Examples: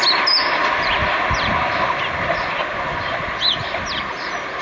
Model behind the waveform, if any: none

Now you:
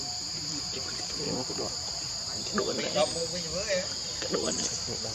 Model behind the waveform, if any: none